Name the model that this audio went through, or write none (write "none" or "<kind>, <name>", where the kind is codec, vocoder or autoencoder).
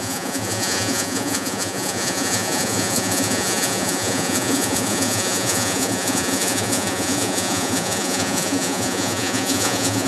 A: vocoder, Vocos